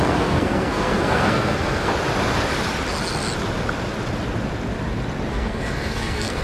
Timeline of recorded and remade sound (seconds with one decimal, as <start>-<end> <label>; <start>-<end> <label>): 0.0-1.9 remade; 1.9-5.3 recorded; 5.3-6.4 remade